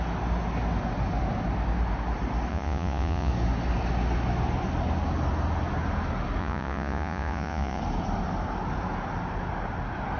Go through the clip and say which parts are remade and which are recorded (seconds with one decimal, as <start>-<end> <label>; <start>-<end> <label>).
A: 0.0-2.5 recorded; 2.5-3.3 remade; 3.3-6.4 recorded; 6.4-7.8 remade; 7.8-10.2 recorded

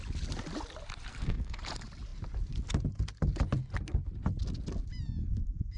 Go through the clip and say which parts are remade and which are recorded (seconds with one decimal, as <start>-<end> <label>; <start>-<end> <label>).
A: 0.0-1.1 recorded; 1.1-1.6 remade; 1.6-5.2 recorded; 5.2-5.8 remade